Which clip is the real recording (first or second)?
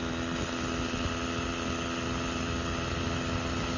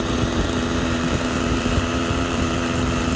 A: first